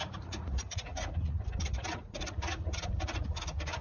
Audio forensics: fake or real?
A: fake